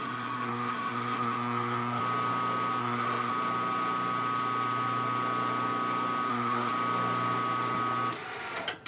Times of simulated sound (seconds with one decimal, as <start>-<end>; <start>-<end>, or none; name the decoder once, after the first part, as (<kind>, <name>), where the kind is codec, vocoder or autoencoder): 0.0-2.0 (codec, SNAC); 2.8-3.3; 6.3-6.7